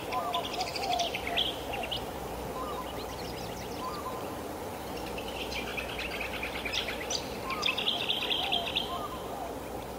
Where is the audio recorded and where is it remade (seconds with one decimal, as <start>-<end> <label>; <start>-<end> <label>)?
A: 0.0-10.0 recorded